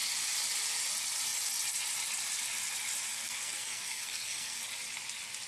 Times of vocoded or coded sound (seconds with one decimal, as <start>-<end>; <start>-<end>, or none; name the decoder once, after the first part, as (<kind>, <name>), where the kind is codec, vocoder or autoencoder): 3.1-4.6 (codec, SNAC)